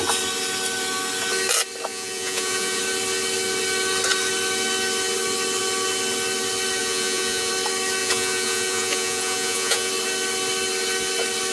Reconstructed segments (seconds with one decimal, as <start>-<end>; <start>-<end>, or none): 1.9-2.8; 6.8-7.5; 8.0-9.9